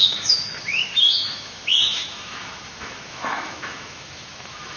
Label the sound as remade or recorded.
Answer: remade